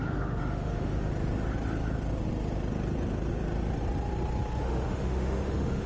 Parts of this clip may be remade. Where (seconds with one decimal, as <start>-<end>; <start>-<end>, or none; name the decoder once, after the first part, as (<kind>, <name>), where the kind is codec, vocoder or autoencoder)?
0.0-1.1 (autoencoder, DAC-VAE); 4.6-5.9